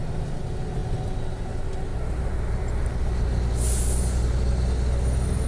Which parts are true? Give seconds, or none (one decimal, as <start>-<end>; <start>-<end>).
0.0-5.5